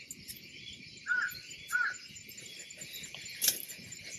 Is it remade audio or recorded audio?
recorded